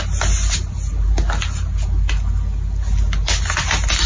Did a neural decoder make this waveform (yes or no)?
no